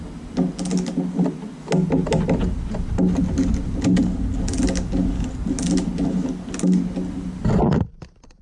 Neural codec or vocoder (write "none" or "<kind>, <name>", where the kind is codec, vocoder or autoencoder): none